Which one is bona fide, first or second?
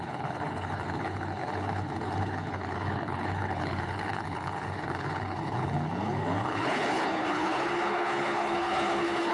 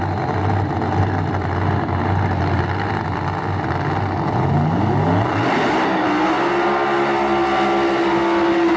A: second